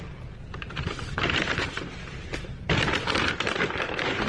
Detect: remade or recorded recorded